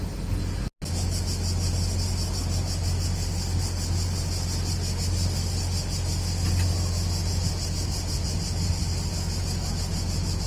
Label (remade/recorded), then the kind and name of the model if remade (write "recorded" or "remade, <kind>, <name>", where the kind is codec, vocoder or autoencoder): recorded